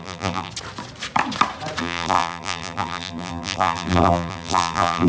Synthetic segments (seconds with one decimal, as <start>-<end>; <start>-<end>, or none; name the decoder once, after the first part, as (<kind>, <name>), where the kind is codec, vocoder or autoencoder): 0.0-0.5 (vocoder, BigVGAN v2); 1.8-5.1